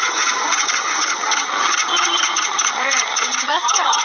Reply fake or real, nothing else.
fake